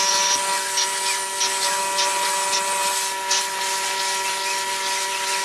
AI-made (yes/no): no